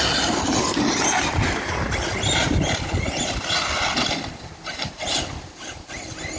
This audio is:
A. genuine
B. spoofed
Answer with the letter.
A